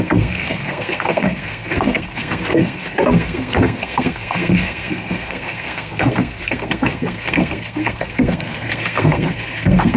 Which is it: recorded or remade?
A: remade